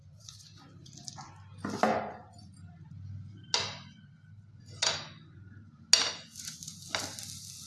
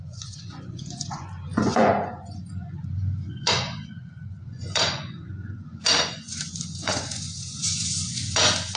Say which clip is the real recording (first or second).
first